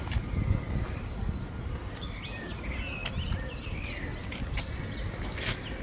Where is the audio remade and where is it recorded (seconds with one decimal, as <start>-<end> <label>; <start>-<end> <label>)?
0.0-3.0 recorded; 3.0-3.8 remade; 3.8-4.2 recorded; 4.2-4.8 remade; 4.8-5.8 recorded